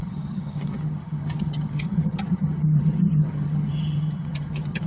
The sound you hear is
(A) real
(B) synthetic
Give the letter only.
B